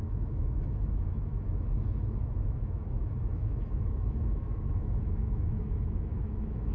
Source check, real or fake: fake